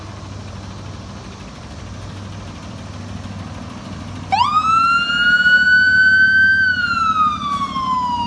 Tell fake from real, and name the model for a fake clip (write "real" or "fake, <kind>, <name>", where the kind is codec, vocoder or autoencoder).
real